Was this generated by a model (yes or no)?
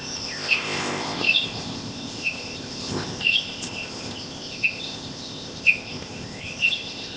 yes